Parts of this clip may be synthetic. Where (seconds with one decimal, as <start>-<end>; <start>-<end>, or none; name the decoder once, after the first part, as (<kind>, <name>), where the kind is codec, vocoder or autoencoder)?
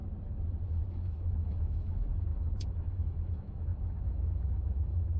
0.9-5.2 (autoencoder, DAC-VAE)